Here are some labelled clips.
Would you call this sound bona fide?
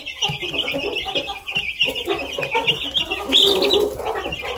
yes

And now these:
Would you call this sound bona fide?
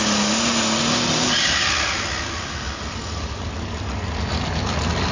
yes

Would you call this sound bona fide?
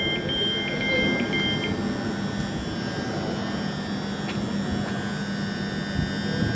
yes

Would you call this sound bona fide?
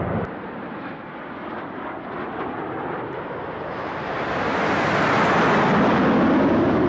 yes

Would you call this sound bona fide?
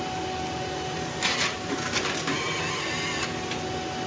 yes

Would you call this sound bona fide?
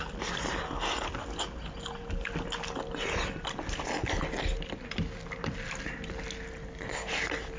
yes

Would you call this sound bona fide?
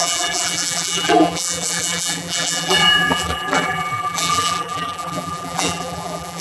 no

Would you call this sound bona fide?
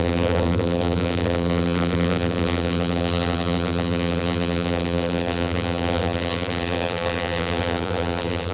no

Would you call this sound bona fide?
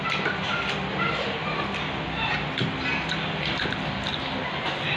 no